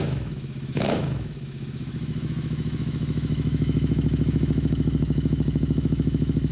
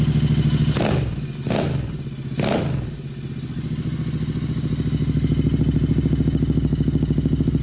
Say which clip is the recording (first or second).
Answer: second